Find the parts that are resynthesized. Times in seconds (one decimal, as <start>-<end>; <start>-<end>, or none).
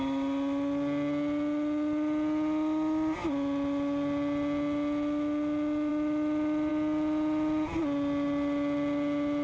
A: none